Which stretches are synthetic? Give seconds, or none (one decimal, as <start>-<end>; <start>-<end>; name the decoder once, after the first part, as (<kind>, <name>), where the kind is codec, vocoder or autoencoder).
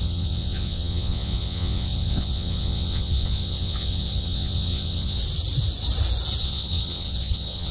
0.0-5.2 (vocoder, WaveNeXt); 6.4-7.7